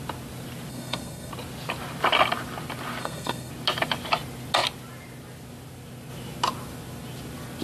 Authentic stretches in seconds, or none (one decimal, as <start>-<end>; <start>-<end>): 0.0-0.7; 1.3-3.0; 3.5-7.6